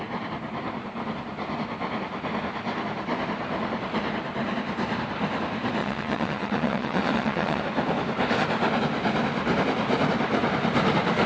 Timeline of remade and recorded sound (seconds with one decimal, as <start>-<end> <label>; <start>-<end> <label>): 0.0-5.8 recorded; 5.8-7.6 remade; 7.6-11.3 recorded